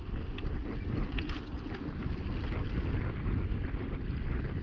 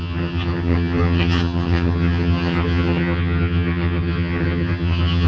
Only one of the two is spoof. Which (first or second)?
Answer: second